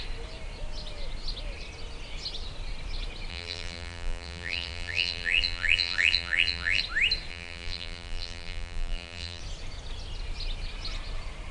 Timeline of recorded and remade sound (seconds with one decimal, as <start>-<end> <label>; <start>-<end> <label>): 0.0-3.3 recorded; 3.3-6.8 remade; 6.8-7.3 recorded; 7.3-9.4 remade; 9.4-11.5 recorded